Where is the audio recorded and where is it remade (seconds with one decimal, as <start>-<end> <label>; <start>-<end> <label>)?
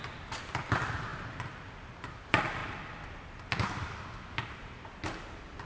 0.0-1.1 remade; 1.1-2.0 recorded; 2.0-5.7 remade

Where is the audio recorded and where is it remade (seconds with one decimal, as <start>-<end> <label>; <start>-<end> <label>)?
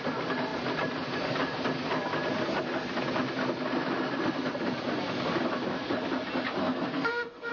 0.0-6.6 recorded; 6.6-7.5 remade